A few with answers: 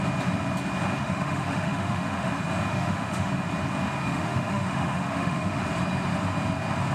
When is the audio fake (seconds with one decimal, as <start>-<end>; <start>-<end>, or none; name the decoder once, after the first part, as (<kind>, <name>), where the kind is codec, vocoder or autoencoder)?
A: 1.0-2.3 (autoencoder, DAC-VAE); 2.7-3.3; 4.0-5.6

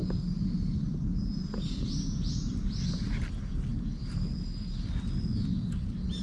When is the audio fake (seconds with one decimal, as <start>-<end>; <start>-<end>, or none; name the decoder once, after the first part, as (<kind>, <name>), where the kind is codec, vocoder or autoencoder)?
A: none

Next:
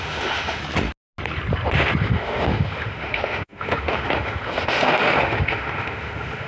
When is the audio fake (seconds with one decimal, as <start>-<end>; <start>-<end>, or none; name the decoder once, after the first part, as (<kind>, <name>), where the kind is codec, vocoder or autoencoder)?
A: 0.0-0.6 (autoencoder, DAC-VAE); 2.0-6.5